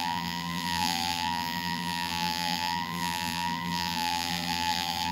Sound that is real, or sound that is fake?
fake